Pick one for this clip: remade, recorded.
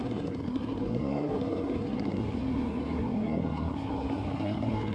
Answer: remade